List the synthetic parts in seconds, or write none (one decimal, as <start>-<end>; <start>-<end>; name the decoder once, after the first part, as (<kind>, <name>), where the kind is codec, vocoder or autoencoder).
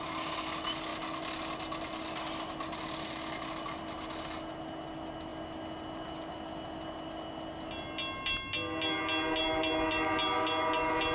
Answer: none